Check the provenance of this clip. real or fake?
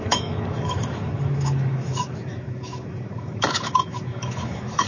fake